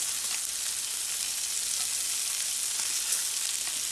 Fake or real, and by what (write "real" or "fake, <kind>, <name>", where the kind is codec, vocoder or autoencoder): real